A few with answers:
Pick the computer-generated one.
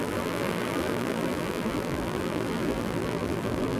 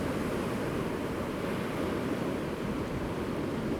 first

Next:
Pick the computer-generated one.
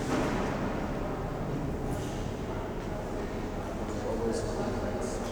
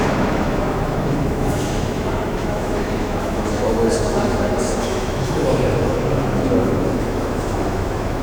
second